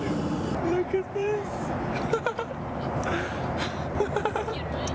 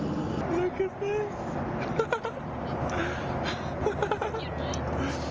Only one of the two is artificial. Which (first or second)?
first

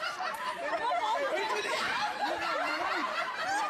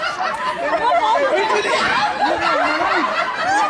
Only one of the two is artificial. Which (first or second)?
first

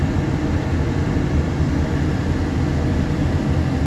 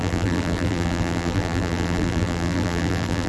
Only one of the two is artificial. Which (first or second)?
second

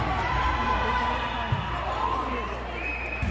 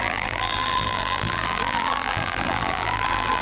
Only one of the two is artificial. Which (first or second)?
second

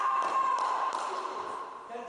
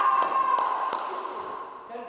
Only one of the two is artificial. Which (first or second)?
first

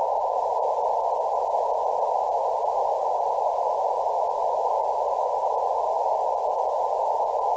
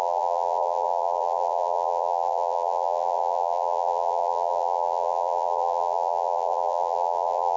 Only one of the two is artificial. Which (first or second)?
second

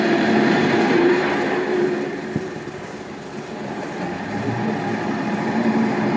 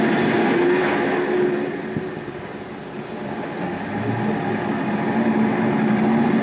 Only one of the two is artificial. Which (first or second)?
first